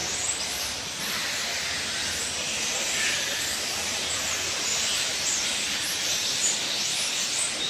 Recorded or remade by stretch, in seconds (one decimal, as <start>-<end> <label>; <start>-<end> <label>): 0.0-1.0 remade; 1.0-3.1 recorded; 3.1-7.7 remade